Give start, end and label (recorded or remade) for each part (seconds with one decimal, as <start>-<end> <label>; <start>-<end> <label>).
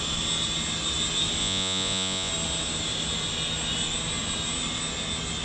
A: 0.0-1.4 recorded; 1.4-2.3 remade; 2.3-5.4 recorded